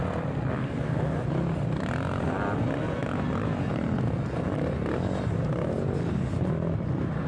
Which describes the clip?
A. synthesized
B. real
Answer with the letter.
B